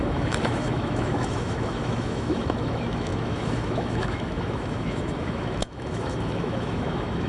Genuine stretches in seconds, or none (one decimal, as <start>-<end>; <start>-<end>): none